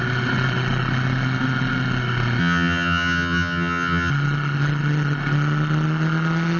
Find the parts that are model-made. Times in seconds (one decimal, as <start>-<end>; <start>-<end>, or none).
2.4-4.1